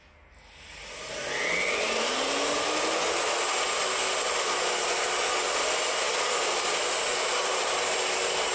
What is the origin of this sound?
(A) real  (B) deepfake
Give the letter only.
A